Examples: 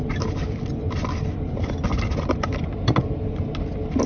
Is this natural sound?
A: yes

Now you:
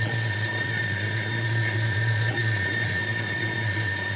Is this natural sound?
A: no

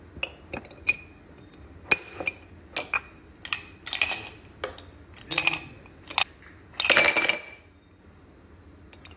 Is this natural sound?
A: yes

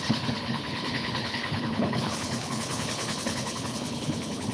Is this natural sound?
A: no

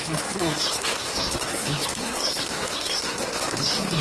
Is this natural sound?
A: no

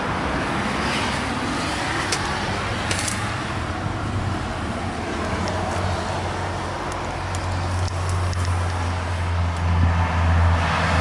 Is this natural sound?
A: yes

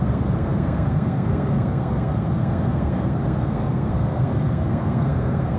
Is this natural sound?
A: no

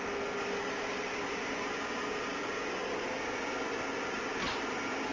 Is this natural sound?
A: yes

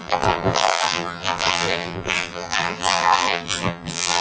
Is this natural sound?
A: no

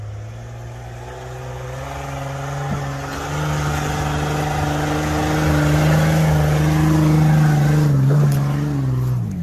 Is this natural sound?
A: yes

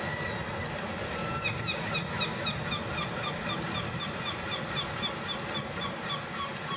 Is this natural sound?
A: yes